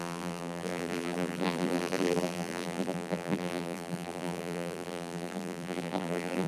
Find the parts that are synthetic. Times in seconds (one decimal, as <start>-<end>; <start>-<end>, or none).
0.0-6.5

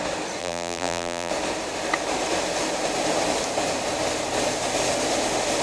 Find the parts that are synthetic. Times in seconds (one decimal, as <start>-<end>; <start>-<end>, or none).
0.4-1.3

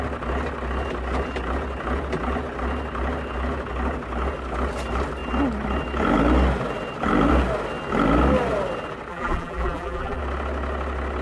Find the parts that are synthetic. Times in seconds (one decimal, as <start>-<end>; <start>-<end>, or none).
9.1-10.2

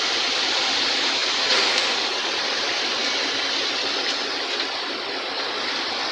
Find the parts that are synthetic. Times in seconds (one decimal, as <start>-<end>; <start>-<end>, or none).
0.0-3.0

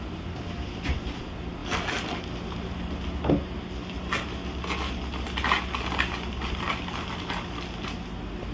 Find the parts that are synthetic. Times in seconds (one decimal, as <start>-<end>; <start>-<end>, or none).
none

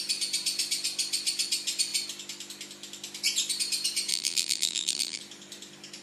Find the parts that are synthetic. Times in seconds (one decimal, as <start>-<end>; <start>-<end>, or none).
4.1-5.2

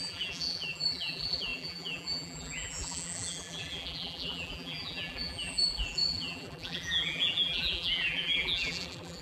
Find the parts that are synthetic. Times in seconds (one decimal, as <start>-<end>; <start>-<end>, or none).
0.0-9.2

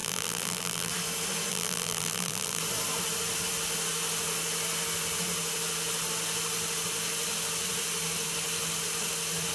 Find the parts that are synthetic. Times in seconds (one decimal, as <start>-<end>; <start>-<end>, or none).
0.0-0.9; 1.5-2.6